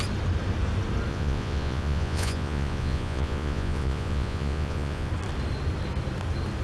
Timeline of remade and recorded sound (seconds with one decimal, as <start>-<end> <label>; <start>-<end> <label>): 0.0-1.1 recorded; 1.1-5.1 remade; 5.1-6.6 recorded